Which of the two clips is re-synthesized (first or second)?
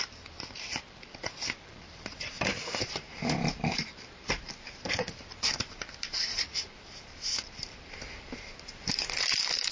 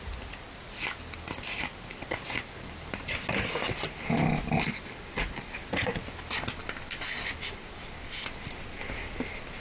first